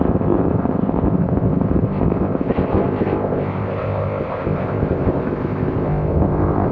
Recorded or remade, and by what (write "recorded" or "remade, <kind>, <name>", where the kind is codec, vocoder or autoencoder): remade, codec, ZipCodec